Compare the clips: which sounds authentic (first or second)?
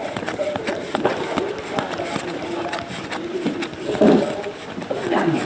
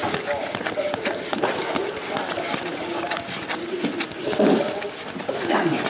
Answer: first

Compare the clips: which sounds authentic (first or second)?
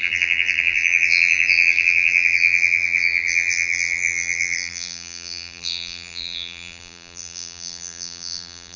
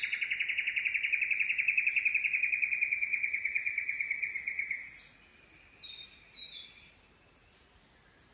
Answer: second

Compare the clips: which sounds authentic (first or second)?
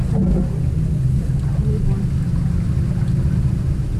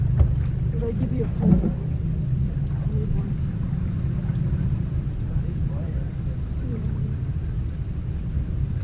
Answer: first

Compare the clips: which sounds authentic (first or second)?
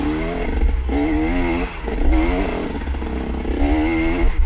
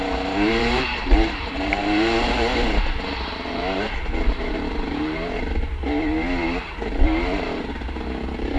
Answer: first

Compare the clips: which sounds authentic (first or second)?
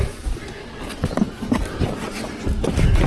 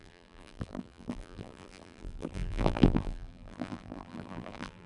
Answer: first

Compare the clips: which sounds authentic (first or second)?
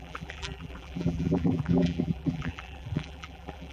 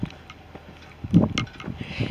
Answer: second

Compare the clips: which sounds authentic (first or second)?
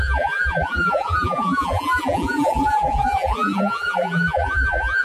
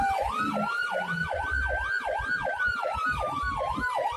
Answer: second